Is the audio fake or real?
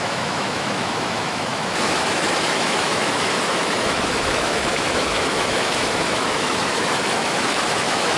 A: fake